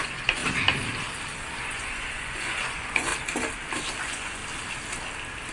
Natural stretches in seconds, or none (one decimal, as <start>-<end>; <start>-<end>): 0.4-1.6; 3.1-4.0; 4.4-5.5